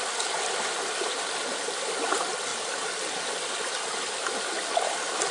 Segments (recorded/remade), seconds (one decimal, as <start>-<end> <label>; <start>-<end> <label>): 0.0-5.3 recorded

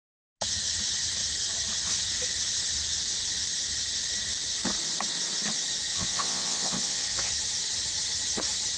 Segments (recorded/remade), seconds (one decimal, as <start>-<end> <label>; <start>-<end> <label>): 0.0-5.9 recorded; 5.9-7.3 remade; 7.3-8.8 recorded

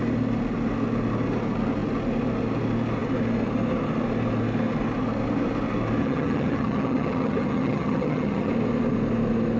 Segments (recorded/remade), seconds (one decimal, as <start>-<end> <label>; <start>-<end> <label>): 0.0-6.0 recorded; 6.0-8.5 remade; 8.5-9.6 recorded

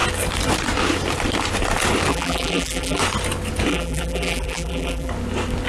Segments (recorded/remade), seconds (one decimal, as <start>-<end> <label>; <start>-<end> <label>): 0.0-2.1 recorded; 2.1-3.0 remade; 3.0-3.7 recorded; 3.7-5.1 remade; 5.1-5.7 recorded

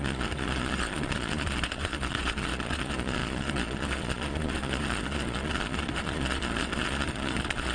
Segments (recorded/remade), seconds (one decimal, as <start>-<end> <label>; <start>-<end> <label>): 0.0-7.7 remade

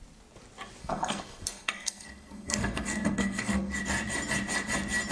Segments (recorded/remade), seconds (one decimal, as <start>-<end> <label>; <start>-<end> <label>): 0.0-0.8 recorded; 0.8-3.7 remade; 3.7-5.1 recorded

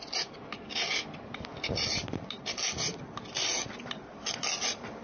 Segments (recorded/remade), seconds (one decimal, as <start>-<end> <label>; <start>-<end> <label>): 0.0-5.0 recorded